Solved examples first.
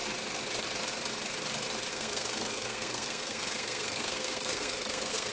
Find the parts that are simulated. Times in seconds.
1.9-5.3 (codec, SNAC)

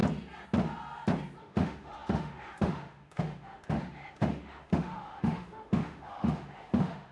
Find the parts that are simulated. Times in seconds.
1.4-7.1 (autoencoder, DAC-VAE)

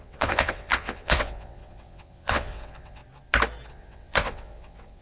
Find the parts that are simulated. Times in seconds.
0.0-3.0 (vocoder, WaveNeXt); 3.7-5.0

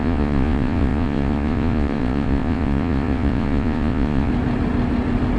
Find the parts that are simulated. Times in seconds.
0.0-4.3 (vocoder, Vocos)

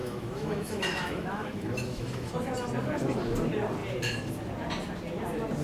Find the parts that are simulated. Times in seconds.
0.0-2.3 (autoencoder, DAC-VAE)